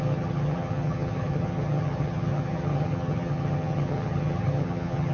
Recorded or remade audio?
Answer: remade